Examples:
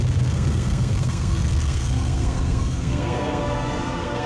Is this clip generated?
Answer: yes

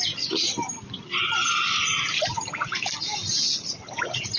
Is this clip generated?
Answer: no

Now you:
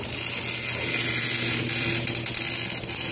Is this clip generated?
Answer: no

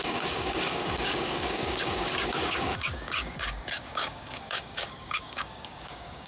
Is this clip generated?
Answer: yes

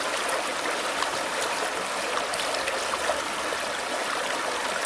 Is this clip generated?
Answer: no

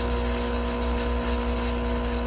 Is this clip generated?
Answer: no